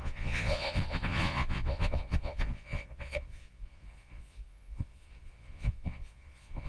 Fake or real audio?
fake